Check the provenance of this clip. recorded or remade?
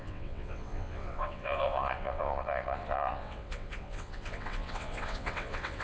remade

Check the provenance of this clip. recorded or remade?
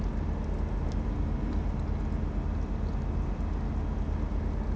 recorded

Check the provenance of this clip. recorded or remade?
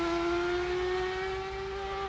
recorded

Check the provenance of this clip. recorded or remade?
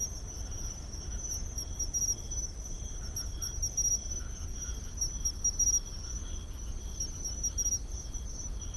recorded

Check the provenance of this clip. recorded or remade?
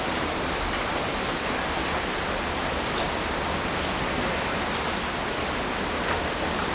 recorded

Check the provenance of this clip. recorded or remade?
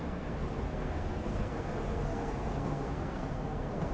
remade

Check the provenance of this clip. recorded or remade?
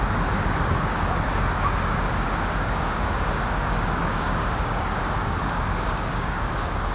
remade